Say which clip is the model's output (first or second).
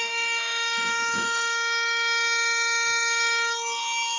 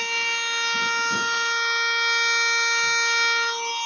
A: first